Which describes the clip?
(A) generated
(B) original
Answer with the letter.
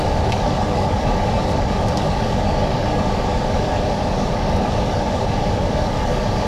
A